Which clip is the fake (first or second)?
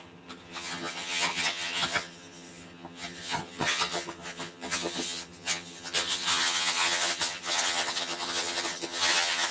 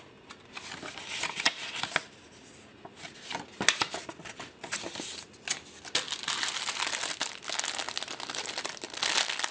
first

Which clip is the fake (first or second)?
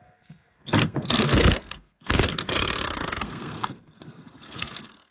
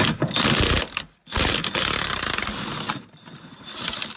first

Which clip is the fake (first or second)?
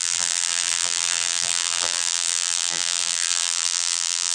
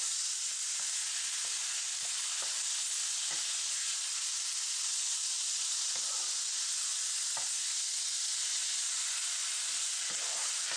first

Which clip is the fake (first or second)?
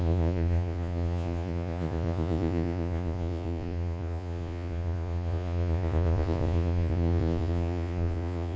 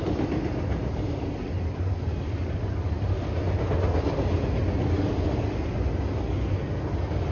first